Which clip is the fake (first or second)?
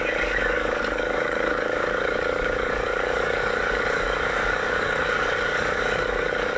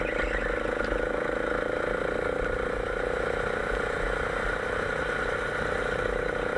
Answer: first